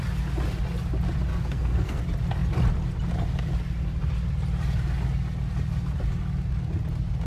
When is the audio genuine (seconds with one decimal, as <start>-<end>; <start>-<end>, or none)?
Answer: 0.0-1.3; 2.0-7.3